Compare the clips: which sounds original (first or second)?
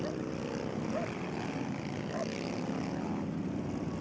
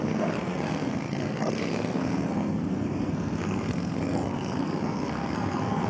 first